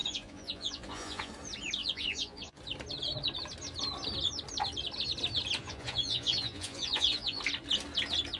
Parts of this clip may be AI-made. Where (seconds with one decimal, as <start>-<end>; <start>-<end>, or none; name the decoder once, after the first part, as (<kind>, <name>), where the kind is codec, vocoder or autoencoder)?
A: 0.0-1.3 (vocoder, Vocos); 1.8-2.6; 5.6-7.4